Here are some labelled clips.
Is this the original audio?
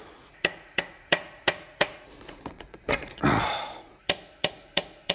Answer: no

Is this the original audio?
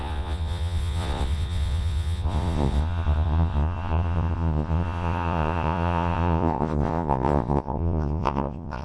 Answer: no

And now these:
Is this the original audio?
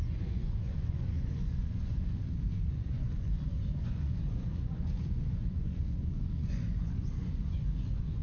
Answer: no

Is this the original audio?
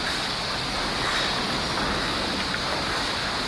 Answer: yes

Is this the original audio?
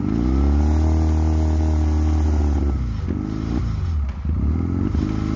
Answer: yes